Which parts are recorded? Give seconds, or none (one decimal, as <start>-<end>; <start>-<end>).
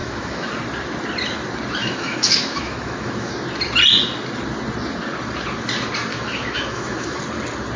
0.5-1.8; 3.3-6.1; 7.2-7.8